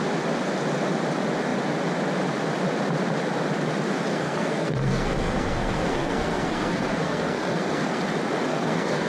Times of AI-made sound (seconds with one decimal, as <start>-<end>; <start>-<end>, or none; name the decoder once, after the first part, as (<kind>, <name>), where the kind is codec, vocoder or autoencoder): 4.1-8.0 (codec, SNAC); 8.5-9.1